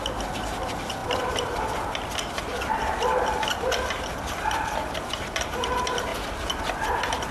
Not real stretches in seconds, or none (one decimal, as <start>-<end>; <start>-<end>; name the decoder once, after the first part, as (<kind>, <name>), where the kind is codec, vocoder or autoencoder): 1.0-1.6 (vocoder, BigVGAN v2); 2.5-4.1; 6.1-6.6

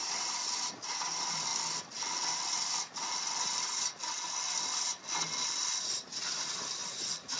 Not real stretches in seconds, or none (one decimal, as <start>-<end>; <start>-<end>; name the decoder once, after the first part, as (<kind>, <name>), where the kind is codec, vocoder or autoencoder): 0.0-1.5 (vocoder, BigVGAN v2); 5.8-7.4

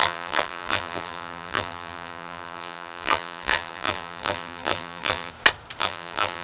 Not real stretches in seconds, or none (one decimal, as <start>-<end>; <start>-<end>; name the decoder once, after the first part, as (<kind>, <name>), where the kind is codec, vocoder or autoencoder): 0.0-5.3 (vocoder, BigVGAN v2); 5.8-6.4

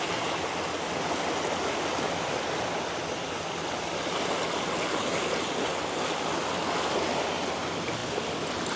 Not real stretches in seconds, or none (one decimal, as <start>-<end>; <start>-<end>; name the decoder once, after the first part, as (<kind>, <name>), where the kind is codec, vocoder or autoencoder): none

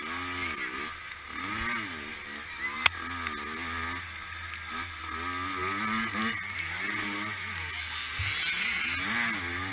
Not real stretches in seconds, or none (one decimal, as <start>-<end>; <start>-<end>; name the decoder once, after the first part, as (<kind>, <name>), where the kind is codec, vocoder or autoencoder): none

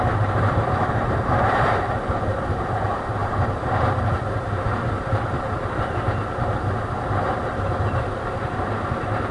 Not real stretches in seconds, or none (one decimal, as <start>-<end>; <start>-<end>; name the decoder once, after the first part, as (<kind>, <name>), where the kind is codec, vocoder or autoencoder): 0.0-9.3 (vocoder, BigVGAN v2)

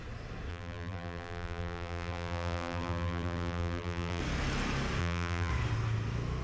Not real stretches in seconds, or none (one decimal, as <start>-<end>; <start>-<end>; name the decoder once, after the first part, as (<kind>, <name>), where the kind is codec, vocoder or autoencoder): 0.5-4.2 (vocoder, BigVGAN v2); 5.0-5.5